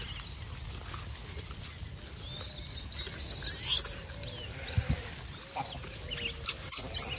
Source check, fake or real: real